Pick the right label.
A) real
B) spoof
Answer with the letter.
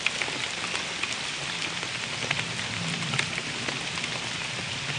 A